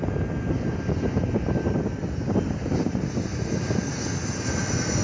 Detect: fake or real real